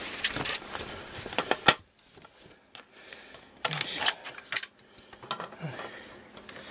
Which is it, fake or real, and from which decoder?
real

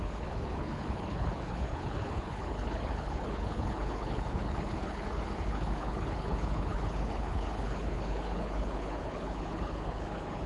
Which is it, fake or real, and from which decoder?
fake, codec, HILCodec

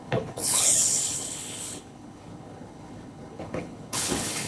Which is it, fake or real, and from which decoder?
fake, codec, HILCodec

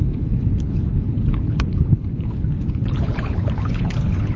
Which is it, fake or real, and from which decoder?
fake, codec, HILCodec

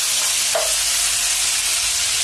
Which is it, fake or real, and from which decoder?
real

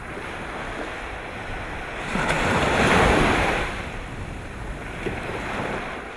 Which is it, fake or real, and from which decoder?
real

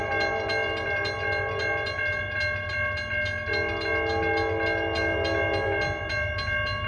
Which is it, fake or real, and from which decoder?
real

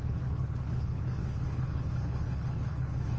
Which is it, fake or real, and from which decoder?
fake, codec, HILCodec